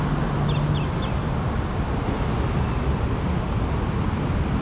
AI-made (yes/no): no